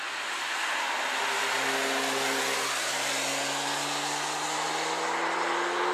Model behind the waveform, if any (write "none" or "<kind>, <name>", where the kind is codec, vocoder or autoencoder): none